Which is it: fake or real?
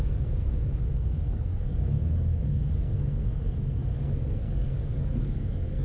fake